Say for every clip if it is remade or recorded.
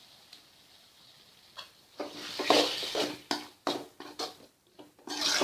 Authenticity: recorded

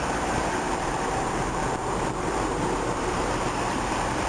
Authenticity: remade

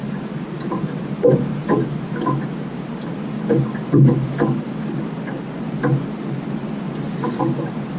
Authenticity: recorded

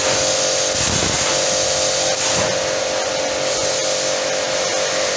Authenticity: recorded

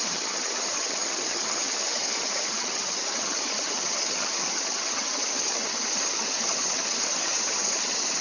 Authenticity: remade